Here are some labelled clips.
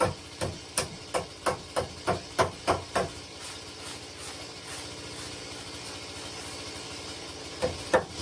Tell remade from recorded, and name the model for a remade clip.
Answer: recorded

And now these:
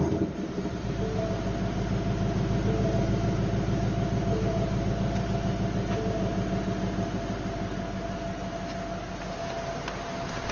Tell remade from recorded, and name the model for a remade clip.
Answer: recorded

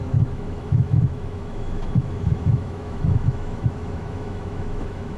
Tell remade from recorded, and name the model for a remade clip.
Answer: remade, autoencoder, DAC-VAE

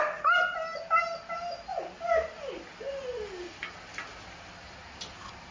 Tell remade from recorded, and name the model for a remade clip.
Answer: recorded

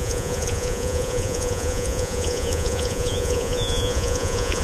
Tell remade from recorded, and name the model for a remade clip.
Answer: remade, vocoder, Vocos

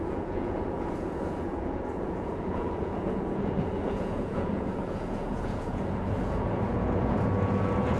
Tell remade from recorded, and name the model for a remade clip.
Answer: remade, vocoder, Vocos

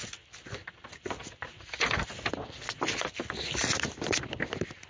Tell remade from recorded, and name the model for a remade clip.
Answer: recorded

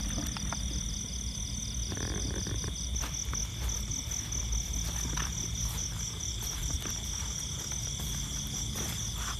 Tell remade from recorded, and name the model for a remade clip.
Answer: recorded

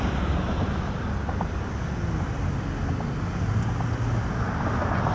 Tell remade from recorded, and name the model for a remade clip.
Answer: recorded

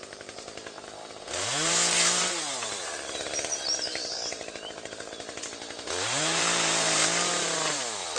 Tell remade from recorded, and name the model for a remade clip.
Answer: remade, vocoder, BigVGAN v2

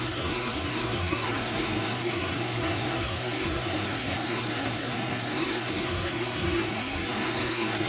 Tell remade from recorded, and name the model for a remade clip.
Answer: remade, codec, SNAC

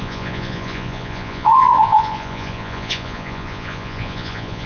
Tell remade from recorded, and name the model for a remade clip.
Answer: remade, vocoder, Vocos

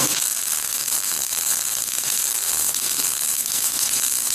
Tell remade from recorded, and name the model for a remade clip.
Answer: remade, codec, SNAC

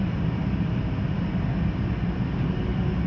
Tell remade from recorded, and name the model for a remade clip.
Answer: recorded